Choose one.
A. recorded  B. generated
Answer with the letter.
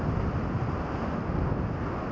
A